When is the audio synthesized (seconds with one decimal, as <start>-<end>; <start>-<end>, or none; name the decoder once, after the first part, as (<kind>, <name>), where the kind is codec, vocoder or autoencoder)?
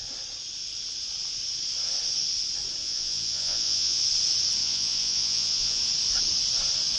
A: 2.8-4.0 (vocoder, Vocos); 4.6-5.8